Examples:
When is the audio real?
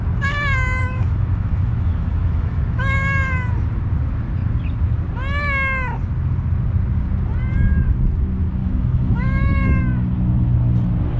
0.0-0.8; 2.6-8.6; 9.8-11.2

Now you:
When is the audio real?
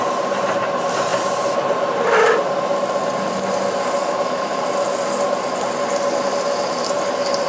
0.0-4.0; 4.6-7.5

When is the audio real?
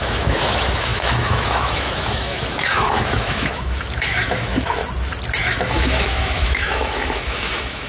4.8-5.4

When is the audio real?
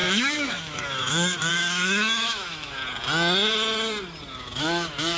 2.8-4.3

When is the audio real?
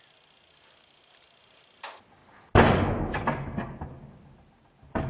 0.0-5.1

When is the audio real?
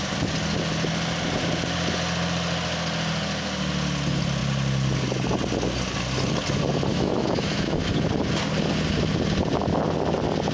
0.0-6.9; 7.9-10.5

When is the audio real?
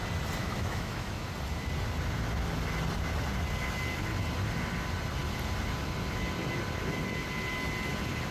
0.0-0.4; 1.3-8.3